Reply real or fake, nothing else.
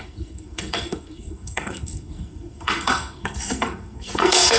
fake